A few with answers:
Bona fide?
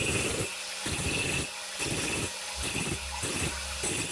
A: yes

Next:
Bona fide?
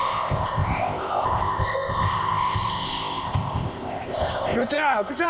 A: no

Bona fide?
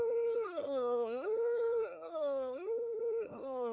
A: no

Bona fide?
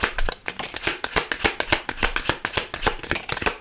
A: yes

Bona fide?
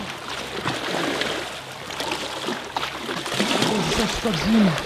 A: yes